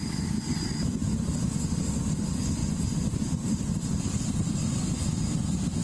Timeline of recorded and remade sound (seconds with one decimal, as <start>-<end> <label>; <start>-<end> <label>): 0.0-2.6 recorded; 2.6-3.6 remade; 3.6-5.8 recorded